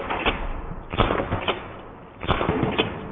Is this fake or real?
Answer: real